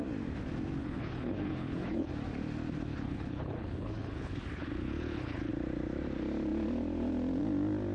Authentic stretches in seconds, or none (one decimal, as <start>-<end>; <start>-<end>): 0.0-0.8; 2.1-2.9; 5.5-7.9